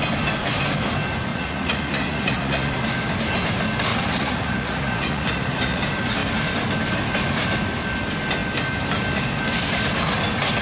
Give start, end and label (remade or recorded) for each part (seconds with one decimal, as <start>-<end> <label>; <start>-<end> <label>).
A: 0.0-1.3 recorded; 1.3-2.7 remade; 2.7-3.9 recorded; 3.9-5.8 remade; 5.8-10.6 recorded